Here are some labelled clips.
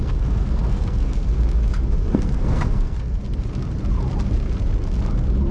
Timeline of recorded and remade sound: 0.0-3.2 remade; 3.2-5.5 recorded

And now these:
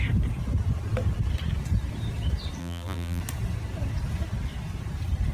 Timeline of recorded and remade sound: 0.0-2.6 recorded; 2.6-3.2 remade; 3.2-5.3 recorded

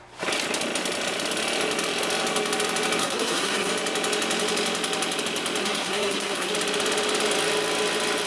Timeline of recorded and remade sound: 0.0-3.0 recorded; 3.0-3.7 remade; 3.7-5.6 recorded; 5.6-6.5 remade; 6.5-8.3 recorded